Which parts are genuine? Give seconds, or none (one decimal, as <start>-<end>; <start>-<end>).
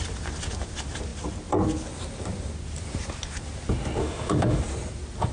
0.0-4.0; 4.6-5.3